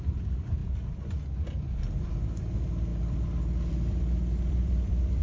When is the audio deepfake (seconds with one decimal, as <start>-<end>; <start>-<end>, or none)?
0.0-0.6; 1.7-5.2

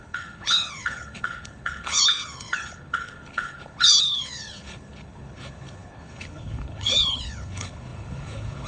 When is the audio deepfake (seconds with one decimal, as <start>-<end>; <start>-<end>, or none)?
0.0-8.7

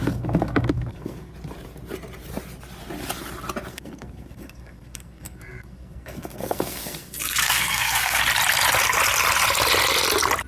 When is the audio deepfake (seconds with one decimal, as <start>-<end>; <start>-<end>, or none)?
0.0-1.3; 3.7-8.2